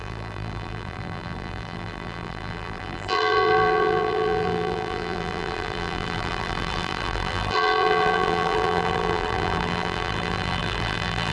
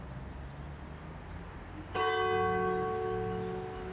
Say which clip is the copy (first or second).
first